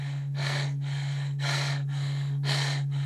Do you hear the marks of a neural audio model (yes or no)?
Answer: yes